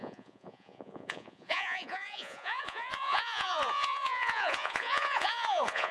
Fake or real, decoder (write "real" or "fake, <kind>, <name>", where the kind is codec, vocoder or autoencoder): fake, vocoder, Vocos